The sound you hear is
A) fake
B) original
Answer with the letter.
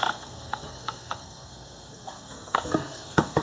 A